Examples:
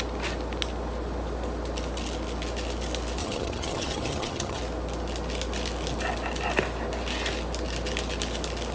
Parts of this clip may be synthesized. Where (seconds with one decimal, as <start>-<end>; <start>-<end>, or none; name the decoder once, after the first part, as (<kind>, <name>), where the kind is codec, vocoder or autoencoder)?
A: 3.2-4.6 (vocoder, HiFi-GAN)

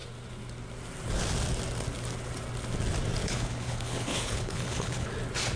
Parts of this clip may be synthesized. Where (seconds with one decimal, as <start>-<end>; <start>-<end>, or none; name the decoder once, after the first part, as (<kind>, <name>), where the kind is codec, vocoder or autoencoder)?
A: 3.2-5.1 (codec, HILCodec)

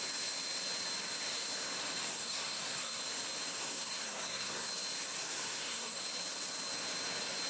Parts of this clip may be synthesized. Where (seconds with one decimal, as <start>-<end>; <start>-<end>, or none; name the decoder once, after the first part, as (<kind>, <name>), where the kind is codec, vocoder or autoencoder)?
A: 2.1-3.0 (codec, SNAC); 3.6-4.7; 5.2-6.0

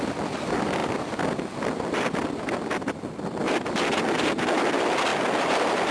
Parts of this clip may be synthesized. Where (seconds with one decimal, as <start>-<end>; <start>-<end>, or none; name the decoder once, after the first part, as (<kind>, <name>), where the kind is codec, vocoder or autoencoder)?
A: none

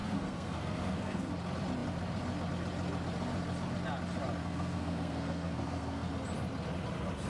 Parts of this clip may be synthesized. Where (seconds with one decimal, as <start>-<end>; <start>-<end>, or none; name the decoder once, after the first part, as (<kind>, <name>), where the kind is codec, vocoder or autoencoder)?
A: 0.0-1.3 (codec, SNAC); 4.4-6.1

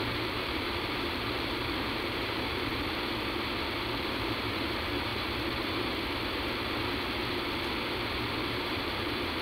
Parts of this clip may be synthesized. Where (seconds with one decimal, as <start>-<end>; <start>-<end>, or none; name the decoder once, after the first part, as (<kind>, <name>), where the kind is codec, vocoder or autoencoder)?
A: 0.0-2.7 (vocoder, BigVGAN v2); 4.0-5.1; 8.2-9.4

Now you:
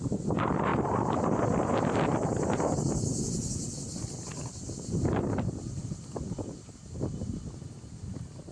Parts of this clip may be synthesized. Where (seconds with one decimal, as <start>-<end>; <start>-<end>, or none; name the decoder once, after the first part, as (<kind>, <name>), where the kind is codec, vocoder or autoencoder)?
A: none